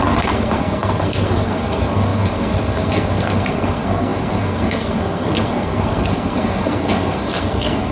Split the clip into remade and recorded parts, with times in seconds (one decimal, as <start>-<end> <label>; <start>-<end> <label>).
0.0-7.9 remade